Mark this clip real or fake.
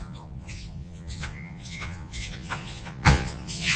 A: fake